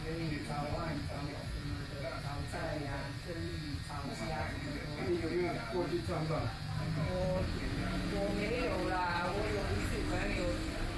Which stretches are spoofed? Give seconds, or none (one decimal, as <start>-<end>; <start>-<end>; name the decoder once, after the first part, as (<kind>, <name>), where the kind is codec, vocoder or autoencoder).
0.0-11.0 (vocoder, BigVGAN v2)